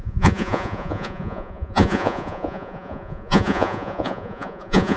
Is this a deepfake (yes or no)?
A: yes